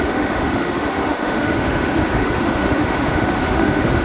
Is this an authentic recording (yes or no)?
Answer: no